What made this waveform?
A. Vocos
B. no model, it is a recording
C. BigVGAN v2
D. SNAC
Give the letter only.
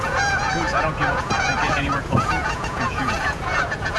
A